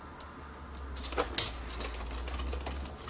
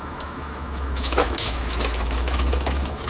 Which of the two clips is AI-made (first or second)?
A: second